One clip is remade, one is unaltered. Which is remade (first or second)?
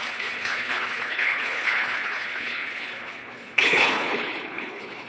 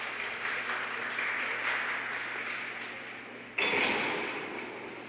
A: first